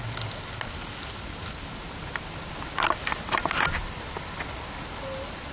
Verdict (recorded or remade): recorded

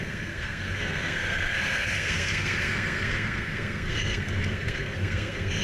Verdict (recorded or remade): remade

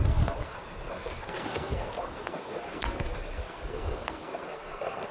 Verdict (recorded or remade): remade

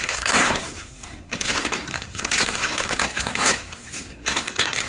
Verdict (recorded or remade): remade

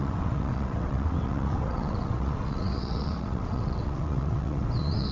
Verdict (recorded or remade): remade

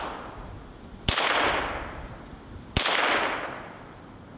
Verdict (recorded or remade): recorded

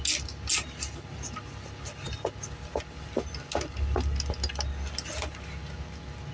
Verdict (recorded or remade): recorded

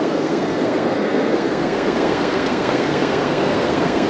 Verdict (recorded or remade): remade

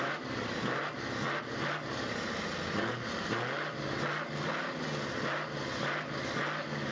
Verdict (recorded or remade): recorded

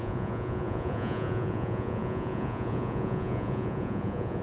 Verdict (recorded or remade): remade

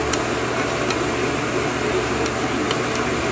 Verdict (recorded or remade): recorded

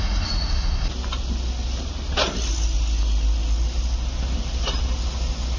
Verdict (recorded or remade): recorded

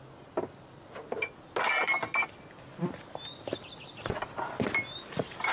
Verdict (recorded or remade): recorded